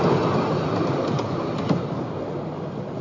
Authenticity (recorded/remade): recorded